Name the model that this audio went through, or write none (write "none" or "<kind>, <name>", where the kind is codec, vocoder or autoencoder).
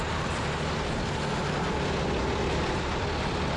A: none